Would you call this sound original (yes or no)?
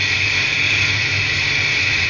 yes